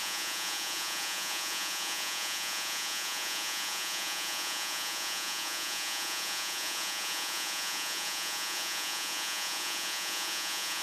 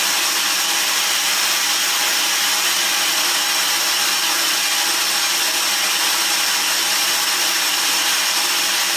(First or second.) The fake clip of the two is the first